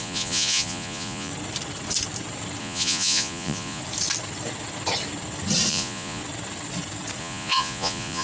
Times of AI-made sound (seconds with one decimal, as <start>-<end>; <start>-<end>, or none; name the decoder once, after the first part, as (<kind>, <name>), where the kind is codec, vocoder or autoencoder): 0.0-1.3 (vocoder, Vocos); 2.6-3.8; 5.7-6.2; 7.2-8.2